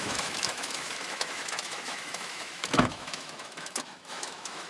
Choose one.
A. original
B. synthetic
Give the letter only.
B